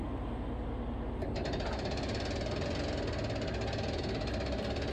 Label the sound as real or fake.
real